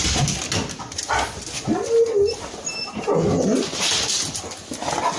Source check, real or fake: real